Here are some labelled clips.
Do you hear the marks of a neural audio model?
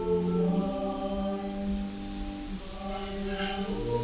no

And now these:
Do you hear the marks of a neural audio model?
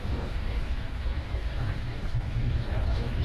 yes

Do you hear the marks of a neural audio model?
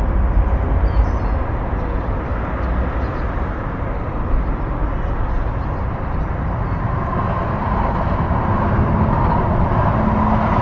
no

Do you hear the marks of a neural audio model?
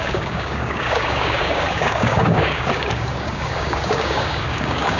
yes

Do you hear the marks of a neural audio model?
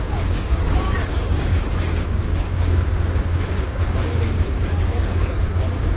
yes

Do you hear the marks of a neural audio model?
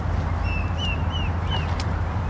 no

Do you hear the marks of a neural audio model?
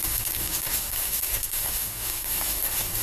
yes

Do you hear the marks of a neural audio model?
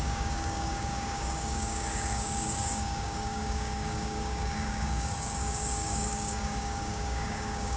yes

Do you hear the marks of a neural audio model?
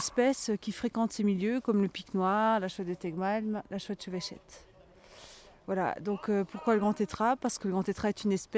no